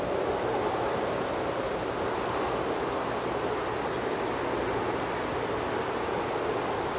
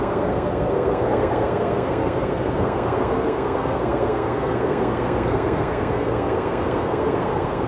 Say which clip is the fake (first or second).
second